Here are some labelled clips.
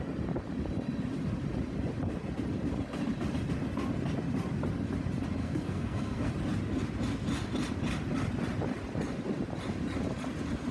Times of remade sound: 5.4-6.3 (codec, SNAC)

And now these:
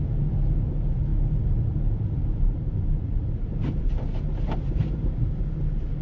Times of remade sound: 1.1-4.7 (vocoder, BigVGAN v2)

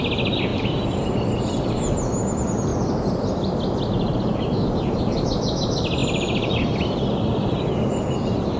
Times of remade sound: 0.5-1.7 (vocoder, BigVGAN v2); 6.0-7.6

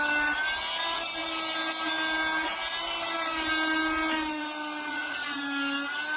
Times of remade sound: 4.9-5.4 (vocoder, Vocos)

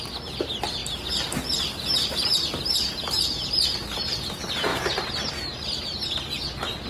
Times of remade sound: 0.8-4.3 (vocoder, BigVGAN v2); 4.7-5.3